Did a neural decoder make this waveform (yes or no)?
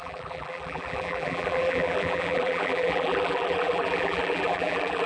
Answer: yes